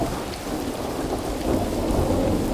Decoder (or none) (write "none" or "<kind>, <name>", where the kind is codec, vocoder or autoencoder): vocoder, BigVGAN v2